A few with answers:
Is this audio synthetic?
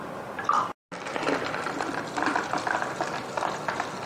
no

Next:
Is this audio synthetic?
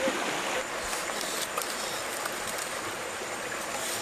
yes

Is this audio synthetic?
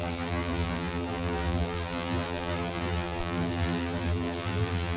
yes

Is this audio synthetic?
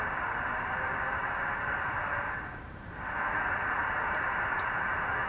yes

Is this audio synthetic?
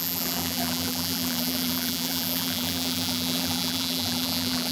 yes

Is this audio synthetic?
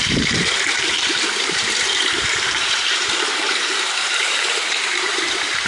yes